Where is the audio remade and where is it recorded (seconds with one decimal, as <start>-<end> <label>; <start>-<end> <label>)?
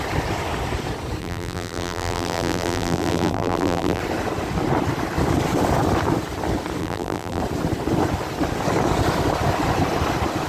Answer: 0.0-1.2 recorded; 1.2-4.0 remade; 4.0-6.8 recorded; 6.8-7.4 remade; 7.4-10.5 recorded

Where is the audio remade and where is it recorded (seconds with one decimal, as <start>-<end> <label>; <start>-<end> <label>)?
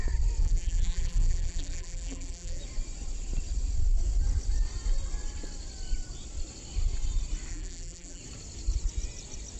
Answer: 0.0-0.4 recorded; 0.4-2.6 remade; 2.6-7.5 recorded; 7.5-8.2 remade; 8.2-9.6 recorded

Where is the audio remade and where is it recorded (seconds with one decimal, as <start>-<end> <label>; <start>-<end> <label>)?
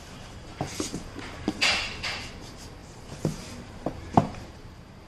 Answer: 0.0-0.5 recorded; 0.5-1.2 remade; 1.2-2.8 recorded; 2.8-5.1 remade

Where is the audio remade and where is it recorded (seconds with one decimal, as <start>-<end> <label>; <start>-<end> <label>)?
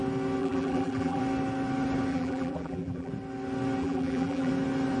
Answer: 0.0-0.4 recorded; 0.4-1.2 remade; 1.2-2.1 recorded; 2.1-3.1 remade; 3.1-3.8 recorded; 3.8-4.5 remade; 4.5-5.0 recorded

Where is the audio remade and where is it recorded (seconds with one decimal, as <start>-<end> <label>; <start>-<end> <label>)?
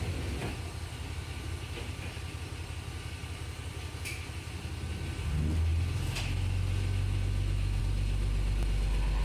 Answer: 0.0-9.2 recorded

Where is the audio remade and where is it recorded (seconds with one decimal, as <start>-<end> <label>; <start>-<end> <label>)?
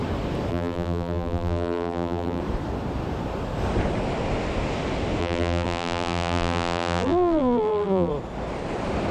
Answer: 0.0-0.5 recorded; 0.5-2.4 remade; 2.4-5.2 recorded; 5.2-8.1 remade; 8.1-9.1 recorded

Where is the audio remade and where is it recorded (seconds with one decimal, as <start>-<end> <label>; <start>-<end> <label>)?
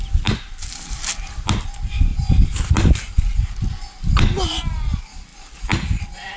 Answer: 0.0-6.4 recorded